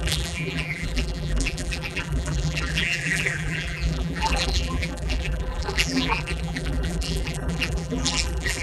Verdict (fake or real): fake